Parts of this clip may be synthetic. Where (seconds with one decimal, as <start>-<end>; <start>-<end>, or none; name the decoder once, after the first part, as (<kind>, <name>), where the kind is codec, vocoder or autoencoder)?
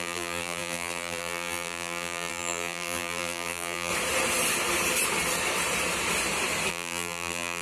0.0-3.9 (vocoder, BigVGAN v2); 6.7-7.6